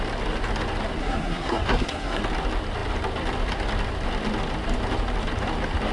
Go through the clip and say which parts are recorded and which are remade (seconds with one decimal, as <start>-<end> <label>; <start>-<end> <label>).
0.0-1.0 recorded; 1.0-2.2 remade; 2.2-5.9 recorded